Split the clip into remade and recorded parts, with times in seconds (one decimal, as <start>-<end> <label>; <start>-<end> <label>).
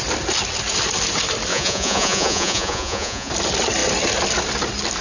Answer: 0.0-1.5 recorded; 1.5-3.3 remade; 3.3-5.0 recorded